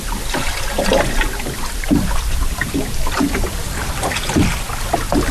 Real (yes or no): yes